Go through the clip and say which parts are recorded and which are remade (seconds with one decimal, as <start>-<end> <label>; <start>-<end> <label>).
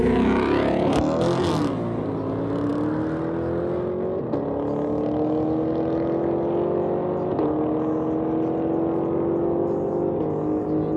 0.0-11.0 recorded